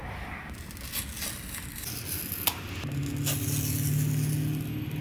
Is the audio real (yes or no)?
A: yes